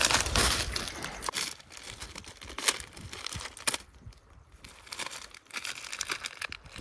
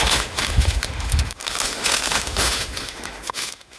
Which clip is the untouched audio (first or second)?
first